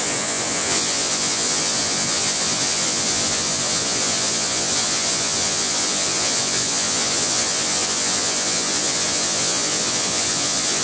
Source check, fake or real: fake